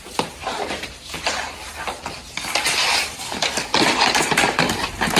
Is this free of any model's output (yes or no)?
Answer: yes